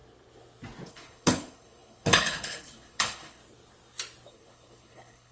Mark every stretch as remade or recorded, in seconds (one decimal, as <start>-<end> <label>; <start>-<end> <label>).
0.0-0.9 recorded; 0.9-3.4 remade; 3.4-4.3 recorded; 4.3-5.3 remade